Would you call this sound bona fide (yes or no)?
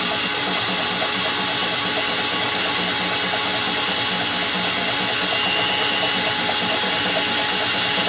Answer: yes